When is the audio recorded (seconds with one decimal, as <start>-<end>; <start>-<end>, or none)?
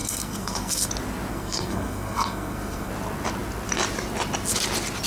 0.9-1.3; 2.9-5.1